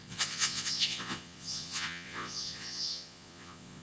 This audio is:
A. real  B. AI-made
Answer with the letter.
B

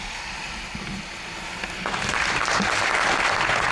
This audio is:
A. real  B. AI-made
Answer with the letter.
A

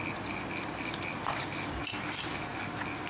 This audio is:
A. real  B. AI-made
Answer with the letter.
A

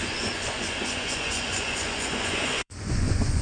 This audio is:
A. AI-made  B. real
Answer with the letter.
A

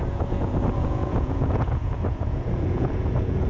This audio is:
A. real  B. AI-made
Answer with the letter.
B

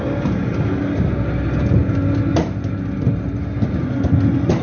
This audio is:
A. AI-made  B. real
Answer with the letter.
B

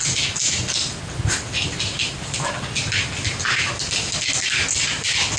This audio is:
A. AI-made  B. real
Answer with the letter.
B